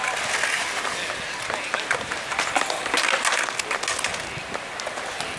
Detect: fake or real real